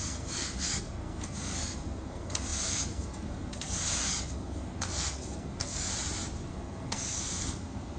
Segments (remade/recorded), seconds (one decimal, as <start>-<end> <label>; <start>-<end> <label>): 0.0-5.9 remade; 5.9-6.5 recorded; 6.5-8.0 remade